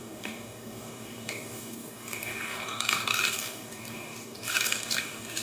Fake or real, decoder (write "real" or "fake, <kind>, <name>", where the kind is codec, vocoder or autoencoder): fake, codec, DAC